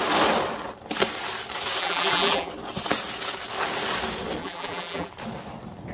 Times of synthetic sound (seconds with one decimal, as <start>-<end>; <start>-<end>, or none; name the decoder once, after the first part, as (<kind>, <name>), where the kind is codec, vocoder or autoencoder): 1.8-2.5 (vocoder, BigVGAN v2); 4.4-5.1